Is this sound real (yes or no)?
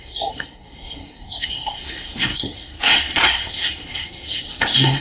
no